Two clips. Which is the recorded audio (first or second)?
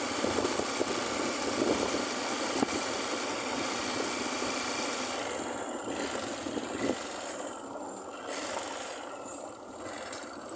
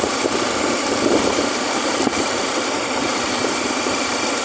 first